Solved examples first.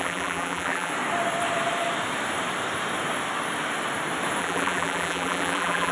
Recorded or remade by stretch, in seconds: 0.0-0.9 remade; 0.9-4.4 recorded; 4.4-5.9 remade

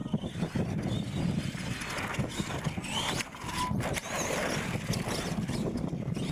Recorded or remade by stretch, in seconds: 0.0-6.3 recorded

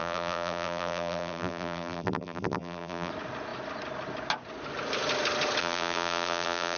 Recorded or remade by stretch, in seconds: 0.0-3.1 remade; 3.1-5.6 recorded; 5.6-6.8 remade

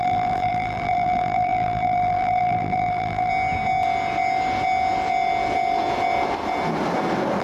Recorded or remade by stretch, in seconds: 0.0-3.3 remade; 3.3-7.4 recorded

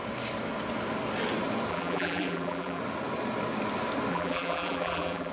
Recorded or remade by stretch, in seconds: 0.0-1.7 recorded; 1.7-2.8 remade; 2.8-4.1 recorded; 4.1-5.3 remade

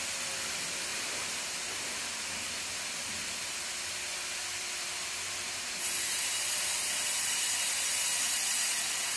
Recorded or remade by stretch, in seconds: 0.0-0.9 recorded; 0.9-1.4 remade; 1.4-9.2 recorded

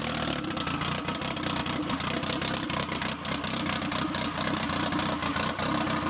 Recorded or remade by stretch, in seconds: 0.0-1.6 recorded; 1.6-4.6 remade; 4.6-6.1 recorded

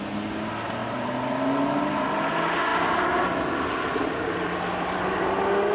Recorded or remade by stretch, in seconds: 0.0-5.7 recorded